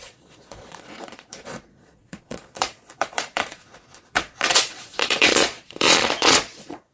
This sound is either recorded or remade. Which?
remade